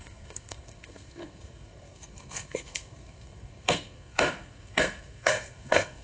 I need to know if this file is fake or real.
fake